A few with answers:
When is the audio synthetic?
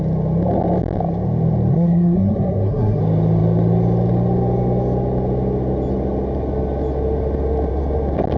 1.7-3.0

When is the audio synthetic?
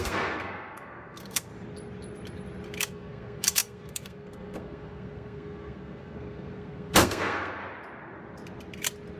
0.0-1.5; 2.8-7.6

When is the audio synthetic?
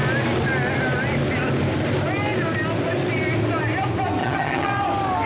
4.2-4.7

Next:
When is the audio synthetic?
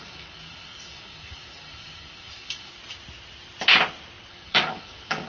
0.0-2.8; 4.3-5.3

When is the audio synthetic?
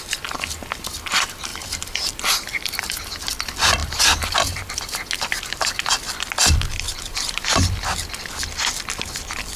1.5-2.0; 6.4-6.9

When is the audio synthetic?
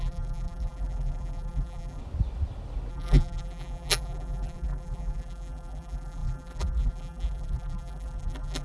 0.0-2.0; 2.9-8.6